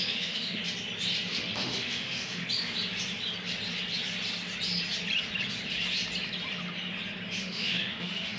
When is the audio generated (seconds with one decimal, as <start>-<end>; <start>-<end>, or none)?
0.0-0.6; 1.3-2.4; 7.4-8.4